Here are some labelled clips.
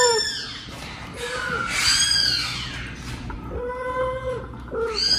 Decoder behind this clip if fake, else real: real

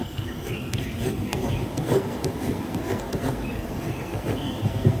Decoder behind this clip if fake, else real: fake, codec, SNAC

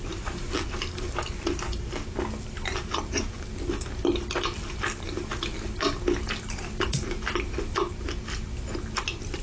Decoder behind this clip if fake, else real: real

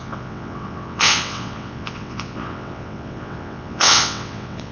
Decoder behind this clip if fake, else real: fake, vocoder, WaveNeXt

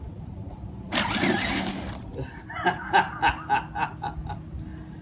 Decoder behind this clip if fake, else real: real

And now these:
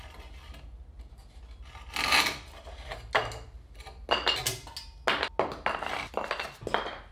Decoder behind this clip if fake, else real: real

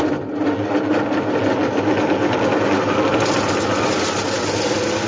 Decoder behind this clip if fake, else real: real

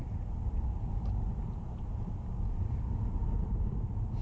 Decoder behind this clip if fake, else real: real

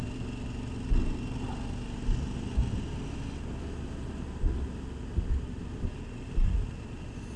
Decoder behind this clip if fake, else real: real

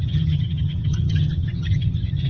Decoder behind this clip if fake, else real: fake, vocoder, HiFi-GAN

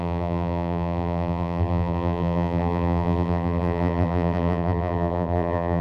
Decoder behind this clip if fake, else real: fake, vocoder, BigVGAN v2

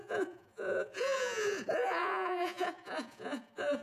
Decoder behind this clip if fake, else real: fake, vocoder, Vocos